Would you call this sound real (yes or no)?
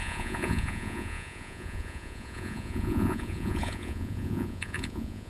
no